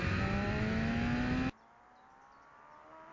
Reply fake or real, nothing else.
real